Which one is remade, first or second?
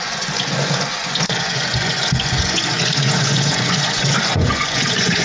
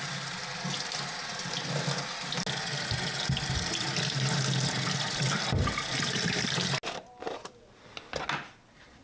first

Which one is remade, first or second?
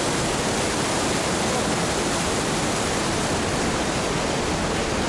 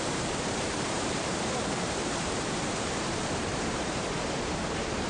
second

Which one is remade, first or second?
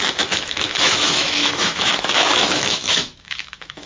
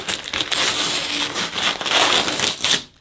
first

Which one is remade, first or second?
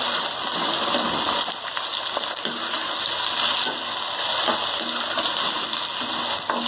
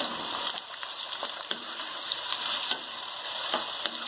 second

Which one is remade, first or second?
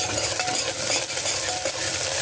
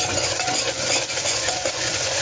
second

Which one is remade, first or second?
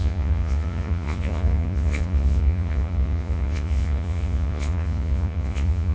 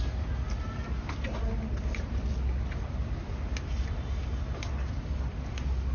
first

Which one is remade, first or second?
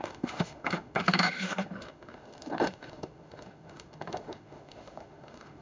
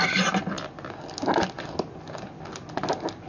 first